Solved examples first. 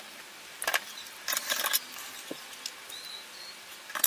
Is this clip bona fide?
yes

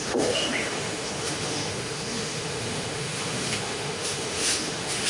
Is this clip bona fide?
no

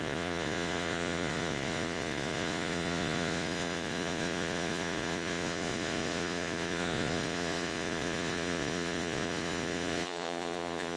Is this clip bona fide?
no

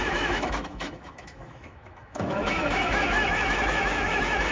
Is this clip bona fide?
no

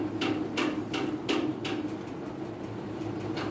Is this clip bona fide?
yes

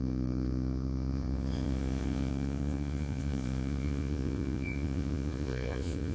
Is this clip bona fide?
no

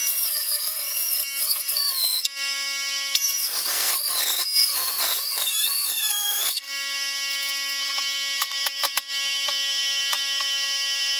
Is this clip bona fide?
no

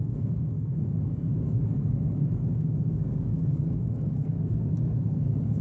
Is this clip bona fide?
no